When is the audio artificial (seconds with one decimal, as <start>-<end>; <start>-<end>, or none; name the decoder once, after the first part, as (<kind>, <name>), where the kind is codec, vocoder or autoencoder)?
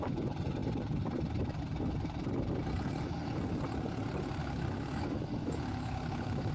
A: 4.4-6.5 (autoencoder, DAC-VAE)